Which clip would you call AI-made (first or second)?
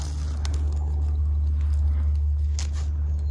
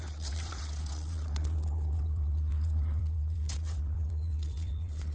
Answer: second